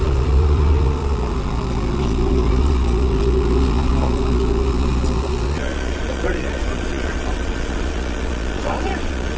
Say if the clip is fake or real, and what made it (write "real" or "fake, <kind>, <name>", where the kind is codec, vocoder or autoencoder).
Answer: fake, vocoder, Vocos